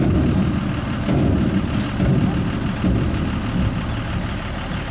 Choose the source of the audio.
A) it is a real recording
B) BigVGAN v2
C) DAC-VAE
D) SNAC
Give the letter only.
A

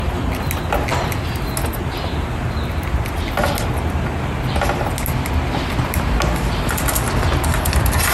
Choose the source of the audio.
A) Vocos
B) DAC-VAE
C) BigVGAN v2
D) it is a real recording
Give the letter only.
D